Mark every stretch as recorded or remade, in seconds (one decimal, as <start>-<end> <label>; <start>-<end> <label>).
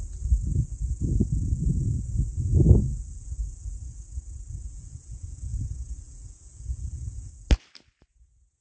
0.0-4.7 recorded; 4.7-7.3 remade; 7.3-8.1 recorded; 8.1-8.6 remade